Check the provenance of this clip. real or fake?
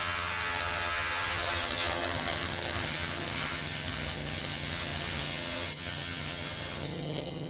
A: fake